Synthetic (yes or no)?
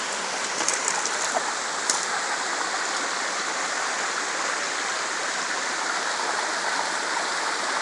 no